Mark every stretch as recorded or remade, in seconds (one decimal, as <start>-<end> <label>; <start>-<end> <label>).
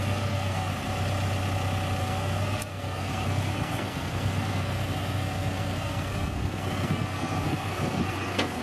0.0-0.7 remade; 0.7-2.0 recorded; 2.0-8.6 remade